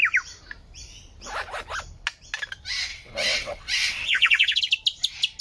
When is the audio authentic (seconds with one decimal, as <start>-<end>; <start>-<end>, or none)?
0.0-2.9; 4.6-5.4